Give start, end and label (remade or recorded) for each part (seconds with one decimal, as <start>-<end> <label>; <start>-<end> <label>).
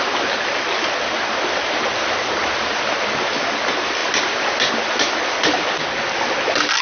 0.0-6.8 recorded